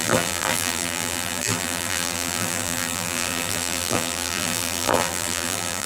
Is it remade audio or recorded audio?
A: remade